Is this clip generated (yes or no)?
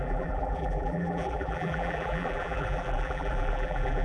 yes